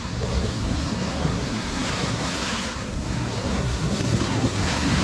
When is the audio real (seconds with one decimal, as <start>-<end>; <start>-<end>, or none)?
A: none